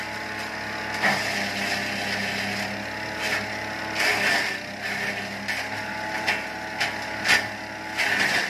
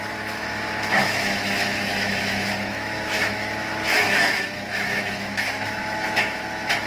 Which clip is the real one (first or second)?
first